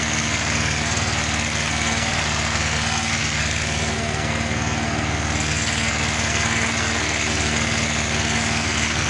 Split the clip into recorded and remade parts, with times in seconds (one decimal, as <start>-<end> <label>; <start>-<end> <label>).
0.0-9.1 remade